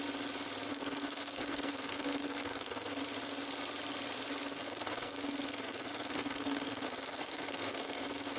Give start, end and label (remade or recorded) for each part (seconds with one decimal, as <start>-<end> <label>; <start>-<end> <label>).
0.0-0.7 recorded; 0.7-3.0 remade; 3.0-4.5 recorded; 4.5-8.4 remade